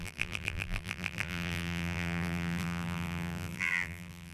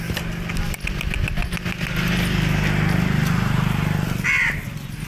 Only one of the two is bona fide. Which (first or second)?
second